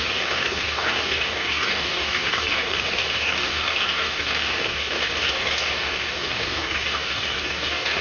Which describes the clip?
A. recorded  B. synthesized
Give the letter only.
B